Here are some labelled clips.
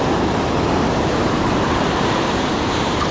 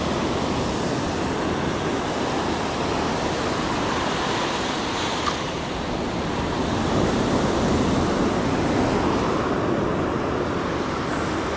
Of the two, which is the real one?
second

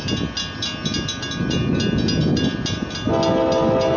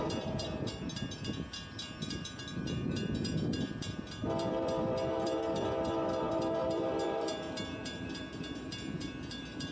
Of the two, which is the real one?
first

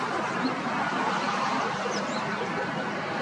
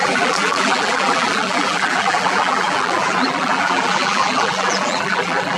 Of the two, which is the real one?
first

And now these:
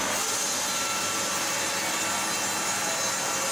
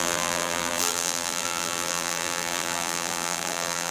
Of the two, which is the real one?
first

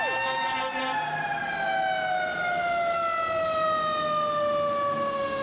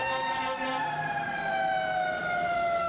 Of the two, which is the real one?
first